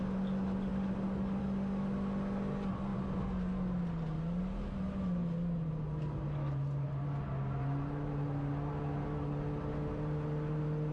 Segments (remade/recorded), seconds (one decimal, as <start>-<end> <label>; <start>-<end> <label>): 0.0-10.9 recorded

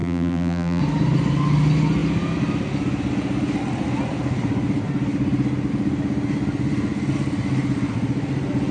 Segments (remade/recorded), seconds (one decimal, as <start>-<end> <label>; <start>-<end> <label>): 0.0-0.8 remade; 0.8-8.7 recorded

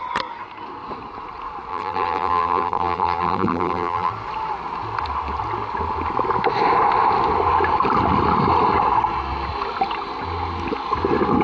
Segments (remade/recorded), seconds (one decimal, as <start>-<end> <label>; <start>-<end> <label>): 0.0-1.7 recorded; 1.7-4.1 remade; 4.1-11.4 recorded

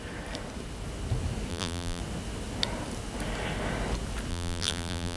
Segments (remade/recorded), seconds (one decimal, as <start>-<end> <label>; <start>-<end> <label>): 0.0-1.5 recorded; 1.5-2.0 remade; 2.0-4.3 recorded; 4.3-5.2 remade

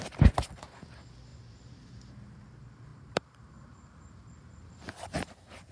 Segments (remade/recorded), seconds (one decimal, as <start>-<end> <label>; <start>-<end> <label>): 0.0-1.3 recorded; 1.3-2.5 remade; 2.5-2.9 recorded; 2.9-4.7 remade; 4.7-5.7 recorded

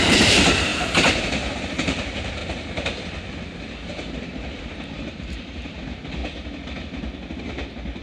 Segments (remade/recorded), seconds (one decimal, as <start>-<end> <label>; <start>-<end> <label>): 0.0-2.4 remade; 2.4-4.1 recorded; 4.1-6.2 remade; 6.2-7.4 recorded; 7.4-8.0 remade